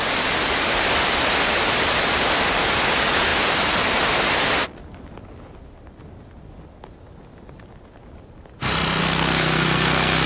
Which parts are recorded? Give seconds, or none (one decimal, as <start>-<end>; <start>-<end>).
0.0-9.0